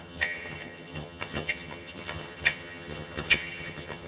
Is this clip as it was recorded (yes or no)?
no